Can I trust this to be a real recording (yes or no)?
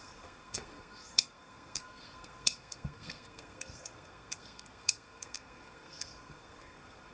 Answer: no